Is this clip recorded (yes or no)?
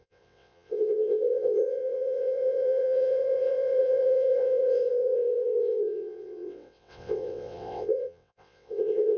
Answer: no